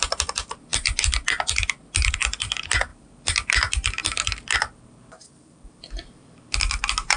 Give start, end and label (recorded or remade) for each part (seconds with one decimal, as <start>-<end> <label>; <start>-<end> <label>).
0.0-2.9 recorded; 2.9-3.5 remade; 3.5-4.0 recorded; 4.0-6.8 remade; 6.8-7.2 recorded